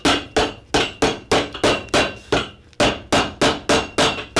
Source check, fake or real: real